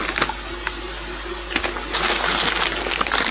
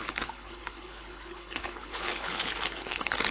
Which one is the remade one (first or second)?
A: second